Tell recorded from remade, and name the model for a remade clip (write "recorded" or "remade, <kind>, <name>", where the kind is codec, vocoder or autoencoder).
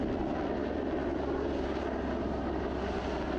recorded